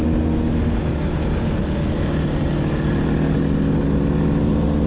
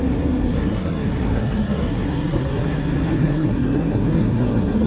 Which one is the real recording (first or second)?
first